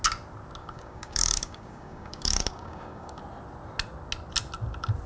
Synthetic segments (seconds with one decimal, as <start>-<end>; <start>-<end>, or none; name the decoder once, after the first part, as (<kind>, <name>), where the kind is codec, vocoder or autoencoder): 0.6-3.2 (codec, DAC)